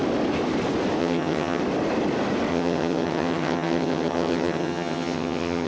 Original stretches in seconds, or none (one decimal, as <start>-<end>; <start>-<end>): 0.0-1.0; 1.6-2.5